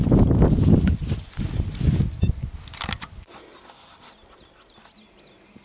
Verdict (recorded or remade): recorded